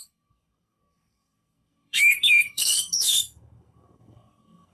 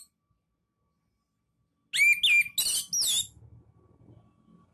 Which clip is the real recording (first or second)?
second